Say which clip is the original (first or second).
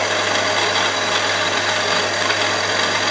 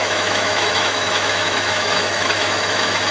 first